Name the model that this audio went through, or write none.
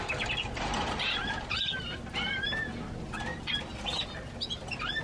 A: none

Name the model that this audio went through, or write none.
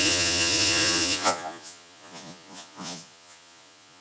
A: vocoder, Vocos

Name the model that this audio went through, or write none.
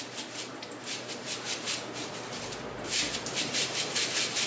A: vocoder, BigVGAN v2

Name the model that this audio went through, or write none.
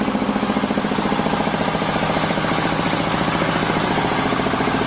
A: none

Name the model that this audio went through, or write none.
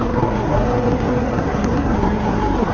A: codec, SNAC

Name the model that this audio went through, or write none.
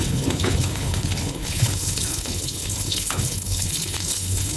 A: codec, HILCodec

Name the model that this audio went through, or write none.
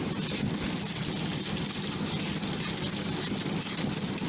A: none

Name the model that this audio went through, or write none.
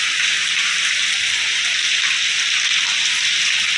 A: none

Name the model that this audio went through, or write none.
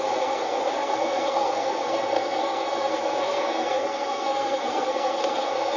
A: codec, SNAC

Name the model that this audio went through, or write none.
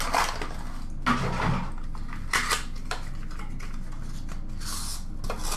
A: none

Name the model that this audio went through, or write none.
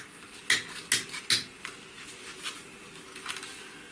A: none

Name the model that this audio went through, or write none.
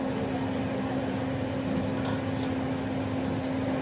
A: none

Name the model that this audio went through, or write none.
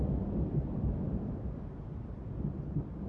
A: none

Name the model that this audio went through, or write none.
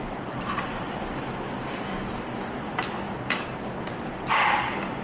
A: vocoder, BigVGAN v2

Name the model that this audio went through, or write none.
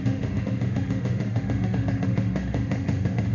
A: autoencoder, DAC-VAE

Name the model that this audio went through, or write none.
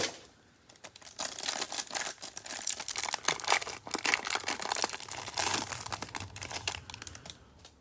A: none